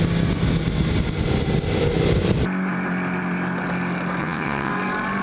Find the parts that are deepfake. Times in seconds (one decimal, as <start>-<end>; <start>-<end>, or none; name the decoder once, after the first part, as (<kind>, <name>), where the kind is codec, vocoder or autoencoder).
4.2-4.7 (vocoder, WaveNeXt)